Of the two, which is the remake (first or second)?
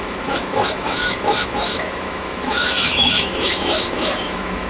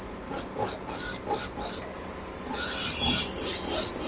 first